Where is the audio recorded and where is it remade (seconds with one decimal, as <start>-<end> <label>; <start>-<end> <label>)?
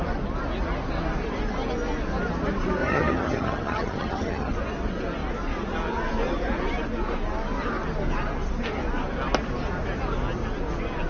0.0-2.8 recorded; 2.8-4.5 remade; 4.5-11.1 recorded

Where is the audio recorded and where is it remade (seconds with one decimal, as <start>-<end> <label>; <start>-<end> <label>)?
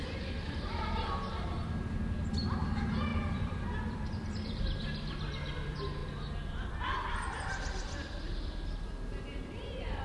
0.0-3.1 recorded; 3.1-4.6 remade; 4.6-10.0 recorded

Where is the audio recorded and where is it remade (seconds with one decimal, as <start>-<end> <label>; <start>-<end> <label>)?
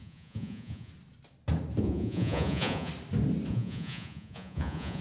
0.0-0.9 remade; 0.9-1.8 recorded; 1.8-2.9 remade; 2.9-3.5 recorded; 3.5-5.0 remade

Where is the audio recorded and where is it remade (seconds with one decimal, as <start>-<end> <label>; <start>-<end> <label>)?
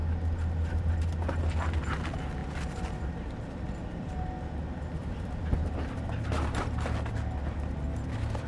0.0-2.4 recorded; 2.4-2.9 remade; 2.9-5.0 recorded; 5.0-6.0 remade; 6.0-8.5 recorded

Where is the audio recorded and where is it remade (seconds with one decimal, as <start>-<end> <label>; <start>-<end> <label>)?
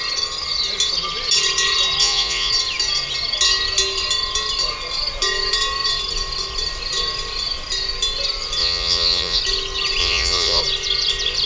0.0-2.0 recorded; 2.0-2.5 remade; 2.5-8.6 recorded; 8.6-9.4 remade; 9.4-10.0 recorded; 10.0-10.6 remade; 10.6-11.5 recorded